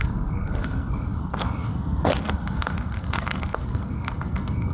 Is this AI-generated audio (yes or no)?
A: yes